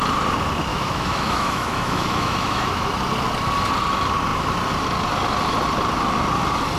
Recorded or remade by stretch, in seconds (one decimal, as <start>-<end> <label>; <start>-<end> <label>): 0.0-0.7 recorded; 0.7-2.9 remade; 2.9-6.8 recorded